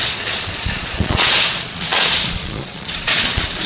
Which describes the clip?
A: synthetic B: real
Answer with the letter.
A